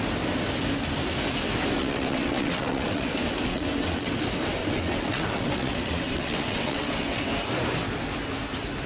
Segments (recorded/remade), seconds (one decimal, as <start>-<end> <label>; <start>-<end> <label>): 0.0-1.8 recorded; 1.8-3.1 remade; 3.1-3.5 recorded; 3.5-4.1 remade; 4.1-4.6 recorded; 4.6-7.2 remade; 7.2-8.9 recorded